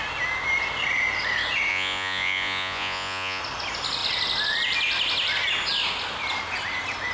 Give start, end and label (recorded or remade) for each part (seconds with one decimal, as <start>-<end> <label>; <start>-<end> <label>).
0.0-1.7 recorded; 1.7-3.4 remade; 3.4-7.1 recorded